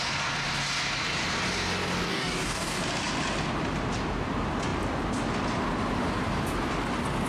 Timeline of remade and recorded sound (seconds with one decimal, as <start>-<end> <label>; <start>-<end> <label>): 0.0-2.1 recorded; 2.1-2.8 remade; 2.8-7.3 recorded